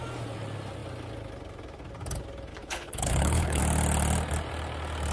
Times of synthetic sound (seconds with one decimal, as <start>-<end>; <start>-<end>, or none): 2.5-3.6